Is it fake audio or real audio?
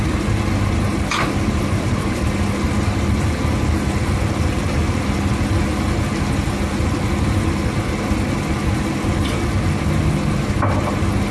real